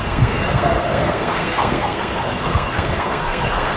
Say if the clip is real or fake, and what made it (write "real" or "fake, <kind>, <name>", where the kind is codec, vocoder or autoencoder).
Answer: fake, codec, SNAC